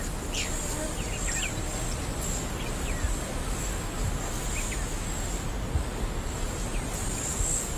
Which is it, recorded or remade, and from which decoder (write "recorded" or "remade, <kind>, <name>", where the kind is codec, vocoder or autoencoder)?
recorded